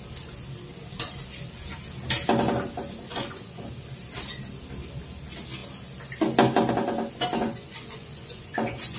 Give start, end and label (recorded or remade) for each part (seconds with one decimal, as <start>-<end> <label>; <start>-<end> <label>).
0.0-3.1 recorded; 3.1-3.6 remade; 3.6-7.4 recorded; 7.4-9.0 remade